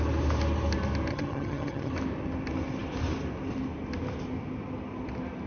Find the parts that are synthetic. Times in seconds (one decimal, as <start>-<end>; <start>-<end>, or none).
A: 1.1-1.9